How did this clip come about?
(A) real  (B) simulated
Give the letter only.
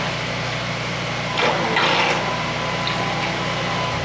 A